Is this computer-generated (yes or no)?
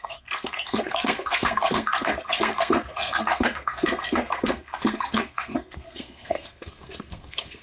yes